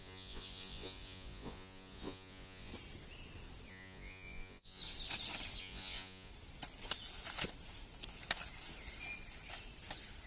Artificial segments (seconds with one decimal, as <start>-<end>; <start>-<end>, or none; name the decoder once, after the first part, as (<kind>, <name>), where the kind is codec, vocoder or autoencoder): 0.0-2.7 (vocoder, Vocos); 3.7-4.8; 5.6-6.3